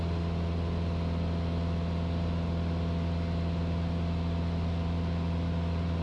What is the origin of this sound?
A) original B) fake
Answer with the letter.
A